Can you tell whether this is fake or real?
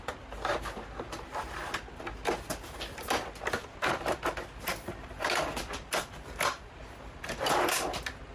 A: real